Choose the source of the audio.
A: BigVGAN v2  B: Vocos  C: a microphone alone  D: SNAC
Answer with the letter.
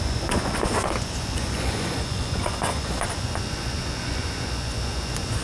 B